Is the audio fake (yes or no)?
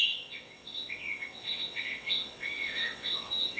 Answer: yes